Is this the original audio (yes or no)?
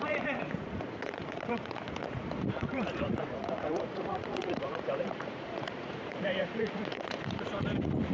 no